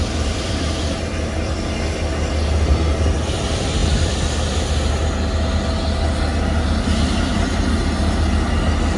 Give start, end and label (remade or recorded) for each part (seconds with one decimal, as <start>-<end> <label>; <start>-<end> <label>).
0.0-1.1 remade; 1.1-9.0 recorded